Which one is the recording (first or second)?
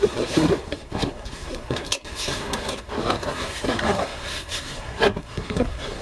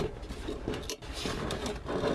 second